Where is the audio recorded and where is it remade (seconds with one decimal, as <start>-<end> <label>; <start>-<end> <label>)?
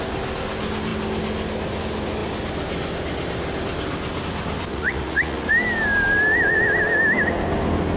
0.0-4.7 recorded; 4.7-5.5 remade; 5.5-8.0 recorded